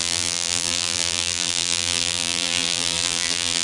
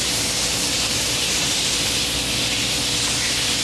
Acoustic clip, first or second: second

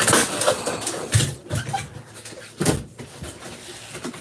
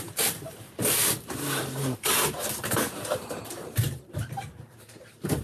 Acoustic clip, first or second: first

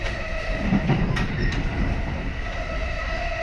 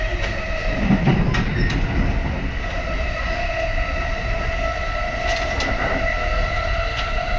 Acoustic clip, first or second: second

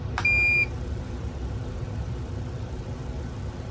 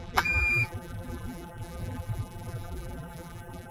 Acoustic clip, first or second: first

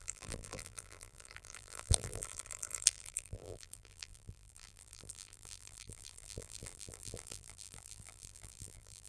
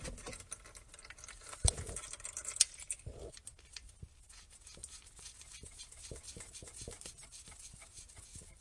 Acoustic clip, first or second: second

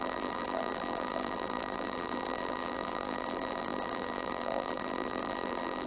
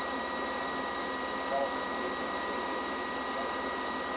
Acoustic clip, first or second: second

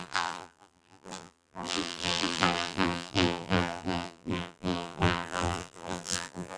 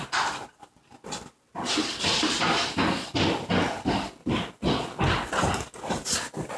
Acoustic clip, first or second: second